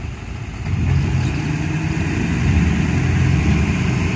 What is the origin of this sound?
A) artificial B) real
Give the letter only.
B